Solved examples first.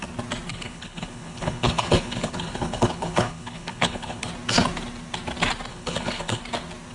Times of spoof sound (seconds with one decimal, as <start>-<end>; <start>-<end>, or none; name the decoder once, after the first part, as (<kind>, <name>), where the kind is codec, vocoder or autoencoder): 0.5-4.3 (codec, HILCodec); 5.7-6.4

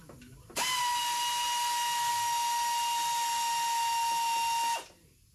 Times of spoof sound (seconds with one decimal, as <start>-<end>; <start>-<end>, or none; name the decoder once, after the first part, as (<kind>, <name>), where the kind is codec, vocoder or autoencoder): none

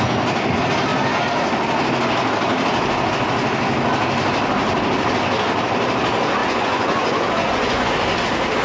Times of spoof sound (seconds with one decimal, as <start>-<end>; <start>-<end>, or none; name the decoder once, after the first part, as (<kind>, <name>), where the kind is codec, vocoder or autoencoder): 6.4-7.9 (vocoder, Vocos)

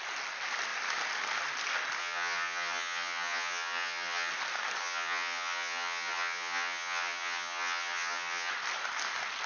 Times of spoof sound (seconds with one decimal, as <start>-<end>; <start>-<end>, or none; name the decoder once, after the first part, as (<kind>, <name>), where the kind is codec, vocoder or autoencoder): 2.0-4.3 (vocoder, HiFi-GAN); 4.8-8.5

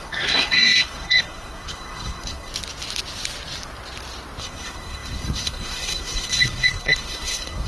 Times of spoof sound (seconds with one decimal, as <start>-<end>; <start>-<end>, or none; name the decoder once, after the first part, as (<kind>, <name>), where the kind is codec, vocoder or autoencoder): 0.0-2.5 (codec, SNAC); 4.4-7.7